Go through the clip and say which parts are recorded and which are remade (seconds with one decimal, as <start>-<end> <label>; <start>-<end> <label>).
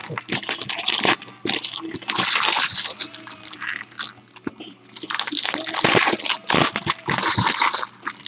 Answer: 0.0-8.3 recorded